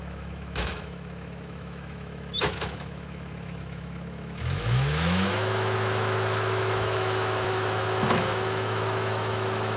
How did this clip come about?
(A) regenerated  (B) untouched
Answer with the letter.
A